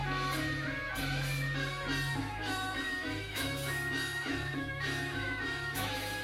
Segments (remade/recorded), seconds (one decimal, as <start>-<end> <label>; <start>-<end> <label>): 0.0-2.2 recorded; 2.2-6.2 remade